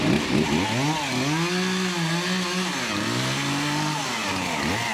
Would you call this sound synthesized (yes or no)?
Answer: no